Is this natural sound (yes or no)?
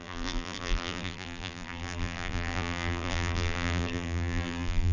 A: no